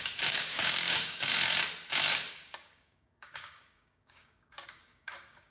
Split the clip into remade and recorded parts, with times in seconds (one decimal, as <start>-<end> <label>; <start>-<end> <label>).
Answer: 0.0-1.3 remade; 1.3-2.3 recorded; 2.3-5.5 remade